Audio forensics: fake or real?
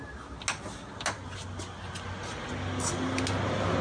real